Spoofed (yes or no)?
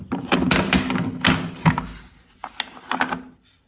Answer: no